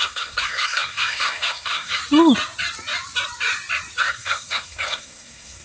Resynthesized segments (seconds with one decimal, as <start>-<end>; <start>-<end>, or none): 0.0-2.0; 4.0-5.6